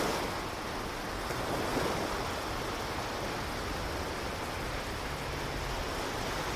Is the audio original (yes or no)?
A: yes